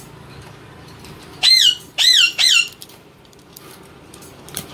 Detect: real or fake fake